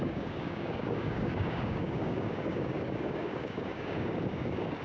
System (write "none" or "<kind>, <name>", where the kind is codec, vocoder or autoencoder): codec, DAC